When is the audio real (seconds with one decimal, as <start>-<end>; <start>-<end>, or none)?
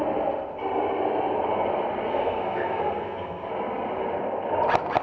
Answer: 0.0-2.1; 3.5-5.0